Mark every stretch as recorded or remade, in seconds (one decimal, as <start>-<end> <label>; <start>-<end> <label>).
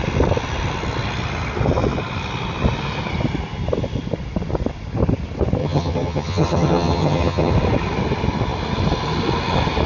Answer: 0.0-5.6 recorded; 5.6-7.5 remade; 7.5-9.9 recorded